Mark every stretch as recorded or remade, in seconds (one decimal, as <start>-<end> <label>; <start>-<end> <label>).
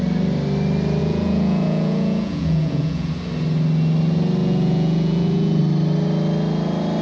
0.0-1.0 recorded; 1.0-3.1 remade; 3.1-4.4 recorded; 4.4-5.6 remade; 5.6-7.0 recorded